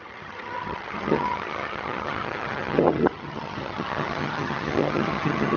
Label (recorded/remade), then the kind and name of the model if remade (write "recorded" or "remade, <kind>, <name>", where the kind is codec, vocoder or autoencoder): remade, vocoder, HiFi-GAN